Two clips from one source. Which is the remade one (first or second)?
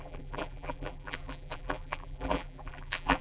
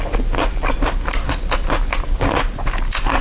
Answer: first